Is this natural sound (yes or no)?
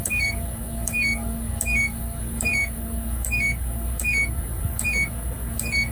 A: no